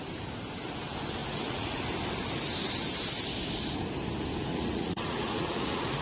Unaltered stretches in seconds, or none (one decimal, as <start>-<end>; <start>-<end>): 0.0-1.2; 1.8-4.5